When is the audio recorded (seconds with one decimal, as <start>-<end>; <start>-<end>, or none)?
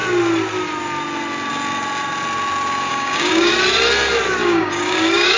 0.0-2.9; 3.5-4.4